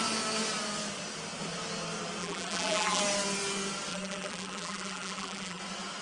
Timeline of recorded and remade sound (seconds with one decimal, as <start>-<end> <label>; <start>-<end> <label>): 0.0-2.2 recorded; 2.2-3.0 remade; 3.0-3.9 recorded; 3.9-5.6 remade; 5.6-6.0 recorded